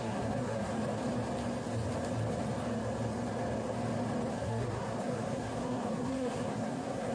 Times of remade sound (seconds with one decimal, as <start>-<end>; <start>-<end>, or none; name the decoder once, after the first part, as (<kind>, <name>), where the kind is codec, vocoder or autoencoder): 0.0-0.7 (codec, SNAC); 4.3-7.1